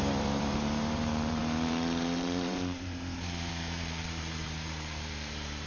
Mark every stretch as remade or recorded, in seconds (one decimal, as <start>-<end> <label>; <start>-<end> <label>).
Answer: 0.0-5.7 remade